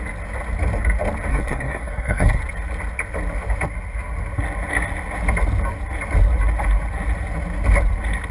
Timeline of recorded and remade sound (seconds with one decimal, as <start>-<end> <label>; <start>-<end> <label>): 0.0-1.3 recorded; 1.3-2.4 remade; 2.4-8.3 recorded